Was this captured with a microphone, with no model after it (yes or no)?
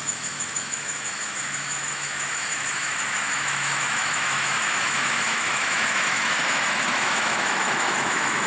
no